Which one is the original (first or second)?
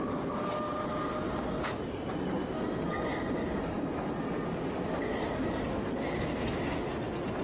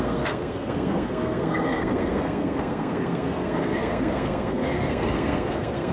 first